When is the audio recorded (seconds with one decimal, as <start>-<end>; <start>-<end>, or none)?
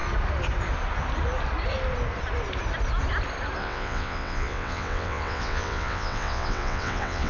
0.0-3.6